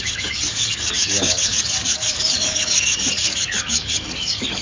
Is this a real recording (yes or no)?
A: no